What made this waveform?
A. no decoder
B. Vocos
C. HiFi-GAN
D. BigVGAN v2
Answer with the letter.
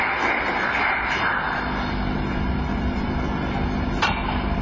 A